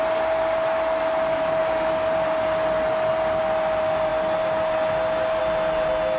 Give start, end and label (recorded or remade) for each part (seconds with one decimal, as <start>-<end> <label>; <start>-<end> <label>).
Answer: 0.0-6.2 recorded